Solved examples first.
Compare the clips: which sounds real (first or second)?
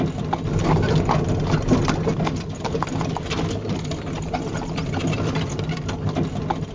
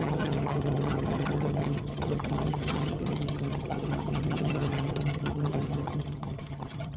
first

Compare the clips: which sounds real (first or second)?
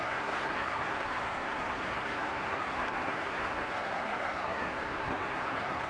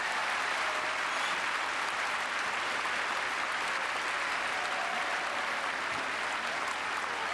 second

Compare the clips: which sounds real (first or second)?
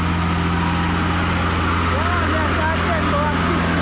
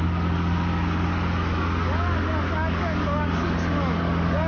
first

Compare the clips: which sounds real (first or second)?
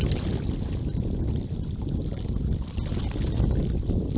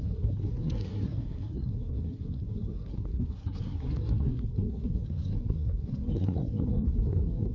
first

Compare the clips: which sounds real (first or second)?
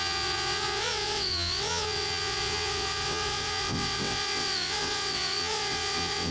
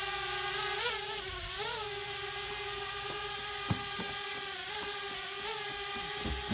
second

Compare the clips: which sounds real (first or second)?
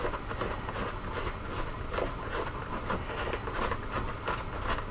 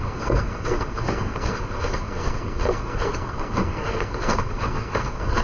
first